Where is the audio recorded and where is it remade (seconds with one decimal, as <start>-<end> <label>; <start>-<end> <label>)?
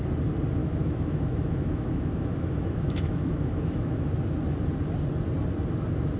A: 0.0-0.6 recorded; 0.6-4.1 remade; 4.1-6.2 recorded